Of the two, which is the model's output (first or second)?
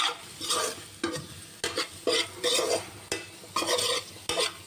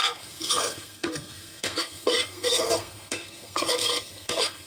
second